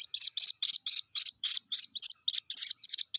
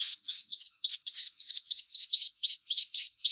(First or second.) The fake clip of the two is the second